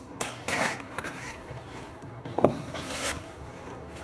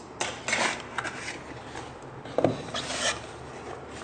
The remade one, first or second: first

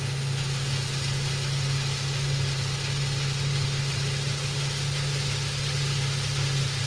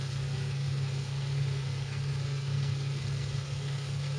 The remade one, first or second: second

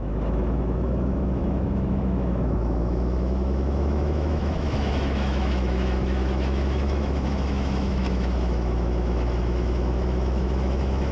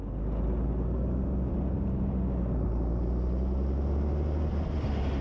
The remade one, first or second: first